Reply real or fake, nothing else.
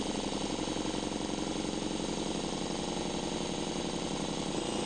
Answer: real